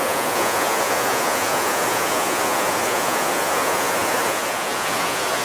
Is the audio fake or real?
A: fake